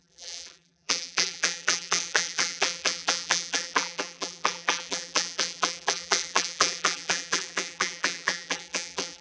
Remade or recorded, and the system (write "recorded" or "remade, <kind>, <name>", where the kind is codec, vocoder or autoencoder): remade, vocoder, BigVGAN v2